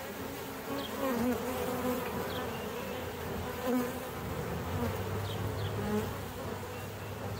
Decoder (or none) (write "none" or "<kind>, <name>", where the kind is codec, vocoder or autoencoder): none